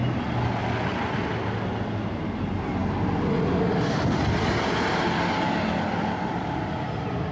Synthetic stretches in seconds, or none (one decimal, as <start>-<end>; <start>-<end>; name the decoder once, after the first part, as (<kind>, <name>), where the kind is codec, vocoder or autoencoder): none